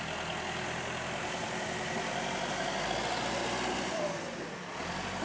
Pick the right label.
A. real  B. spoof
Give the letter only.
A